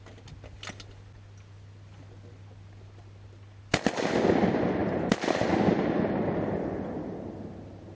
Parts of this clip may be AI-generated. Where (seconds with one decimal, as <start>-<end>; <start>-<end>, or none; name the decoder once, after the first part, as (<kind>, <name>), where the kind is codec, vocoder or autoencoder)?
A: none